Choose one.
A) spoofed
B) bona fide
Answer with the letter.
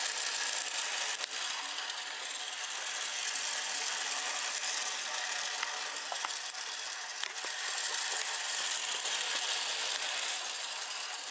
B